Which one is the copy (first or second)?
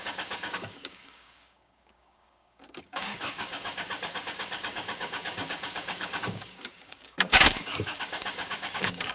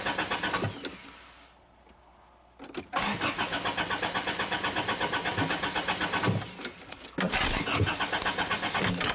first